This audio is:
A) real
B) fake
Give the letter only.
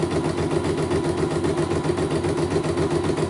A